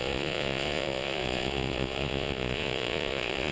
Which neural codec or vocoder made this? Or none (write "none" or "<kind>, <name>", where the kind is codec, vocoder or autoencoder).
vocoder, Vocos